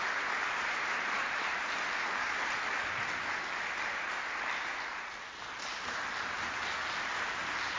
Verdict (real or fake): real